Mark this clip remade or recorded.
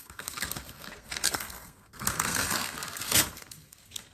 remade